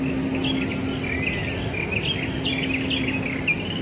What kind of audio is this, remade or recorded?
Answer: recorded